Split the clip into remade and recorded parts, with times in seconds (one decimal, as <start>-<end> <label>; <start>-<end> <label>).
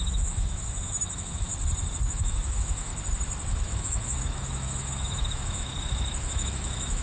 0.0-1.5 remade; 1.5-2.1 recorded; 2.1-2.9 remade; 2.9-3.5 recorded; 3.5-7.0 remade